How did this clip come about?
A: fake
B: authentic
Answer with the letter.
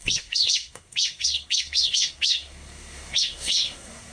A